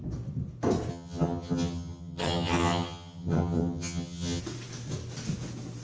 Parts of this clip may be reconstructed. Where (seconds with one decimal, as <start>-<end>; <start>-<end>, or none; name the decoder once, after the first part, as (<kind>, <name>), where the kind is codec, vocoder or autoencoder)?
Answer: 0.9-4.4 (vocoder, HiFi-GAN)